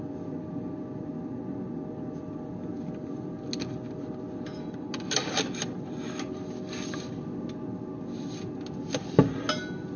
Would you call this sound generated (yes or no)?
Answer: no